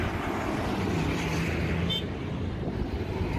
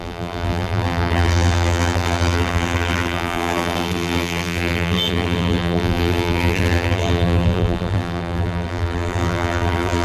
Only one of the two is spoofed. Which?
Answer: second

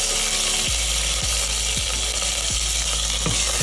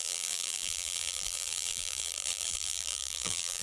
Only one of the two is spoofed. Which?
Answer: second